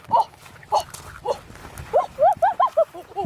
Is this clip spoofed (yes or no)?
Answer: no